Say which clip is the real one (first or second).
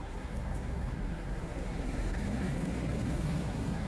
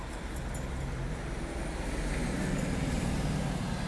second